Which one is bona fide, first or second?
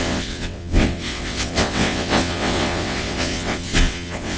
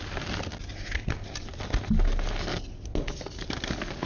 second